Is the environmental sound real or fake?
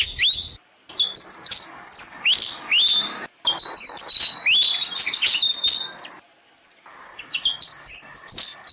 real